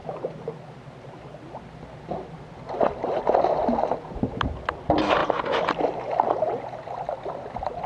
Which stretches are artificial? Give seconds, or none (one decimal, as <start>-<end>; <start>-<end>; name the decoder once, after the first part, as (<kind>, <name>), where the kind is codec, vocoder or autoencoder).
none

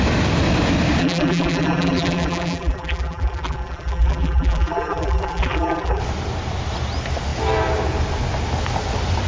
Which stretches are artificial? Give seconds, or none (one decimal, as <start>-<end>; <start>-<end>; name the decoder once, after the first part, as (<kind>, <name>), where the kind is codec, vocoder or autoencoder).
1.0-6.0 (vocoder, BigVGAN v2)

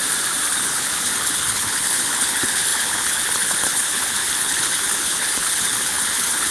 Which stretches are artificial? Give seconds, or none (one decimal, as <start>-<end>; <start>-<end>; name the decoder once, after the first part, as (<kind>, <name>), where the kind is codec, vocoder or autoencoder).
0.5-6.5 (codec, HILCodec)

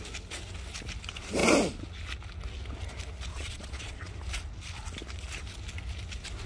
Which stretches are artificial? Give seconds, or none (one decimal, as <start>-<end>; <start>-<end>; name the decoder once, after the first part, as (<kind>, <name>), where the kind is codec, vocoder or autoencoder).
3.3-4.1 (vocoder, Vocos)

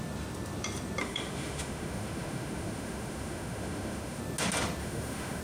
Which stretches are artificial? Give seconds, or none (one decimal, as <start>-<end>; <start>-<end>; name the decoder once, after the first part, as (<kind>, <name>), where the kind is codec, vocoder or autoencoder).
1.0-4.2 (autoencoder, DAC-VAE); 4.8-5.4

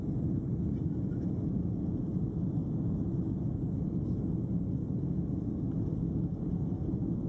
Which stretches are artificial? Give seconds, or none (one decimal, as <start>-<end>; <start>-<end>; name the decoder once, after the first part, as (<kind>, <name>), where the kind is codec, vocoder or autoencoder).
none

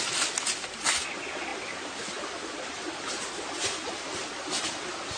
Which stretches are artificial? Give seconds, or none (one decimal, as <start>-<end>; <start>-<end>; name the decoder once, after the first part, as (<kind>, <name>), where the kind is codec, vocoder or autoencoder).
1.5-4.6 (vocoder, BigVGAN v2)

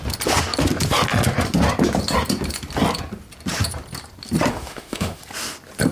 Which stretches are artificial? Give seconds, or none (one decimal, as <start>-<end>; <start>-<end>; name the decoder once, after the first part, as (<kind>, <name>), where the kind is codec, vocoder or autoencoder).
4.5-5.2 (autoencoder, DAC-VAE)